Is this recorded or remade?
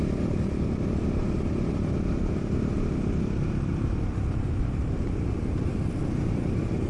remade